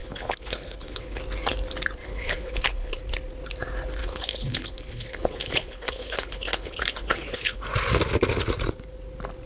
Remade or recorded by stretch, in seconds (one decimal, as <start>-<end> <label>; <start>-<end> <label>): 0.0-1.2 remade; 1.2-2.0 recorded; 2.0-3.0 remade; 3.0-4.0 recorded; 4.0-7.6 remade; 7.6-9.5 recorded